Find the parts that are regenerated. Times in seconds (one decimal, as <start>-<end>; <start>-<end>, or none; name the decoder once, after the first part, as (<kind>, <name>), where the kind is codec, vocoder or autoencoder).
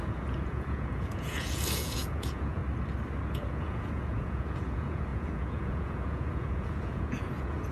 0.0-2.6 (vocoder, Vocos); 3.3-7.7